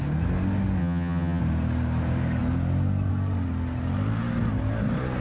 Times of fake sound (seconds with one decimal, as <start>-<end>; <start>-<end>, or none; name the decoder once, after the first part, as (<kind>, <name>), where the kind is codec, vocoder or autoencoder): 0.8-1.4 (vocoder, HiFi-GAN)